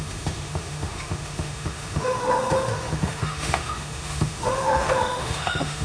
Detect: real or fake fake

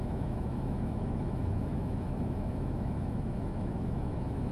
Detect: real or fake fake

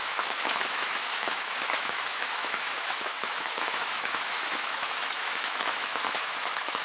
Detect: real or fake fake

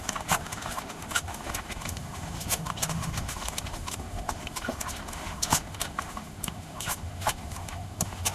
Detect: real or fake fake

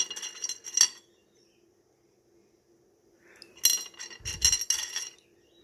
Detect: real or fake real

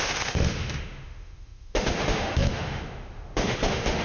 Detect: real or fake fake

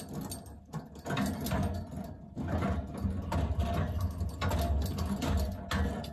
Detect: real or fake real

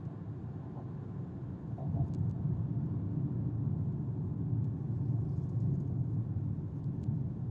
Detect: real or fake real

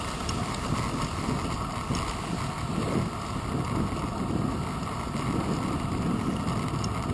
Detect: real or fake real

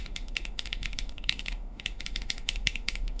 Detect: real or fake fake